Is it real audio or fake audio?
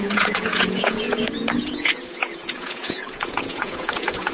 fake